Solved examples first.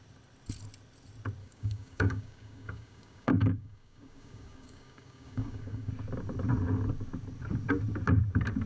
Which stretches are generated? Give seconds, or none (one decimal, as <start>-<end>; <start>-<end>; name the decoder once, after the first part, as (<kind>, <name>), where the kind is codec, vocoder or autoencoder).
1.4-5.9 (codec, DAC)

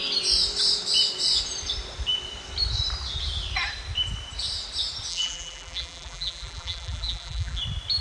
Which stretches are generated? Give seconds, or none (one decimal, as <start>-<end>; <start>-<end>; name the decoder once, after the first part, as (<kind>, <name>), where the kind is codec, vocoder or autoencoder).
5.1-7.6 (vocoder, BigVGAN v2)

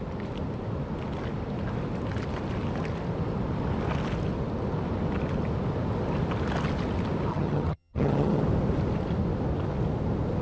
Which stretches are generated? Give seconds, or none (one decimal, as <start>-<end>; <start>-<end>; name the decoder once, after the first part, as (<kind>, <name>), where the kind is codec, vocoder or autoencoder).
7.3-8.4 (vocoder, HiFi-GAN)

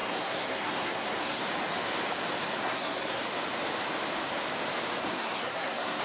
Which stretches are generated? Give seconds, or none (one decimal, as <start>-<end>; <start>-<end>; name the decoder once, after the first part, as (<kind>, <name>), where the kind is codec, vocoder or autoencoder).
0.0-1.4 (codec, SNAC); 2.6-3.2; 5.0-6.0

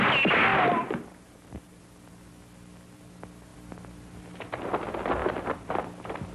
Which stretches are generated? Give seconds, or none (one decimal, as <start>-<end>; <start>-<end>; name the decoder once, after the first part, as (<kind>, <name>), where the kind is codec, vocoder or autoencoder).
0.5-1.8 (vocoder, BigVGAN v2); 5.2-5.8

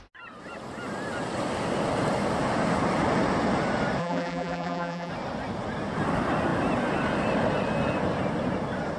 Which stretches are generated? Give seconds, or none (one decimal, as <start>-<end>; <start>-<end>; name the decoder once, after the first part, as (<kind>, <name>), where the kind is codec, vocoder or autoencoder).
4.0-5.1 (vocoder, BigVGAN v2)